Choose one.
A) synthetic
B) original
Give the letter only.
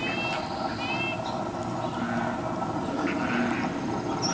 B